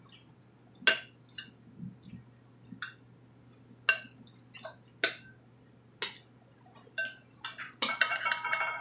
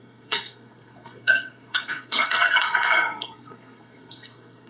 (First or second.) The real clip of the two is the first